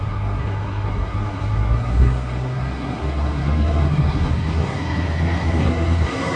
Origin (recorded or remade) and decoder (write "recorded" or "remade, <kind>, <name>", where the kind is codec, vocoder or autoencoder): remade, codec, SNAC